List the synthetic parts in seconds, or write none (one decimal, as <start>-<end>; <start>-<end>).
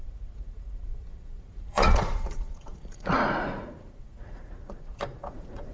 0.0-5.7